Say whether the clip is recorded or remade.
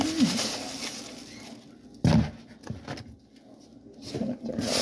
recorded